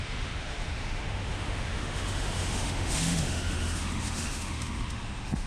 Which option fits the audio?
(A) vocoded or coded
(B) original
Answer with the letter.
A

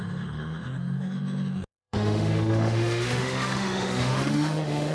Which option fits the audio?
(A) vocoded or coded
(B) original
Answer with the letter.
A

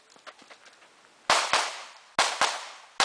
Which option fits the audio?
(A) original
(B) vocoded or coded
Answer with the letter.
A